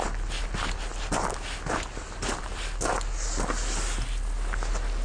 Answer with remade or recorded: recorded